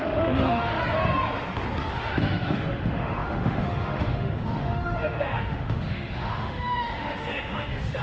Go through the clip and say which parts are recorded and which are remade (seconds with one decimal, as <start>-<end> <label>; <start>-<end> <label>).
0.0-0.8 remade; 0.8-1.9 recorded; 1.9-8.0 remade